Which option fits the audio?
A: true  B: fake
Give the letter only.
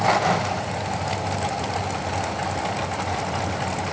A